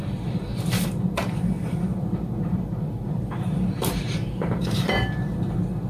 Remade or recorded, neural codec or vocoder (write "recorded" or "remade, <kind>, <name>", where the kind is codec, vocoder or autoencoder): remade, vocoder, BigVGAN v2